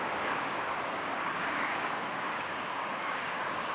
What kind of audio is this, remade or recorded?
remade